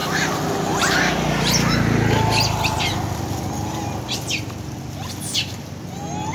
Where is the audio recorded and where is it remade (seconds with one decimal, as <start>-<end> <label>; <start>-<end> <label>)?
0.0-6.3 recorded